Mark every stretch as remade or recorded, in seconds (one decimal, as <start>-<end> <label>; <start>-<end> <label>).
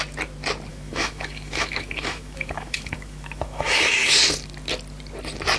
0.0-0.7 recorded; 0.7-4.1 remade; 4.1-5.6 recorded